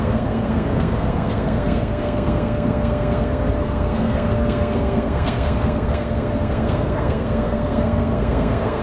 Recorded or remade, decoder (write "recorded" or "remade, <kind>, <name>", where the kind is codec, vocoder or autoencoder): remade, codec, SNAC